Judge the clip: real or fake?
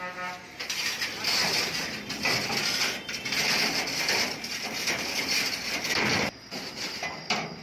real